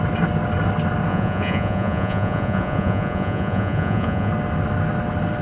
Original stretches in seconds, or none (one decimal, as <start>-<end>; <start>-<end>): 0.0-1.1; 4.3-5.4